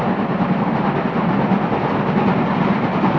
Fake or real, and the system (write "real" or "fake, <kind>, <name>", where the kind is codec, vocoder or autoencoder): real